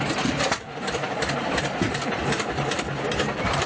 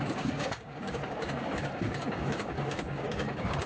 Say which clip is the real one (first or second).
first